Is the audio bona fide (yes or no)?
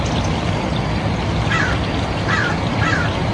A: yes